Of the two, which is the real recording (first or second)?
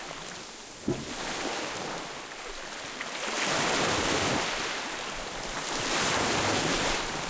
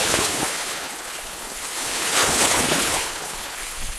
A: first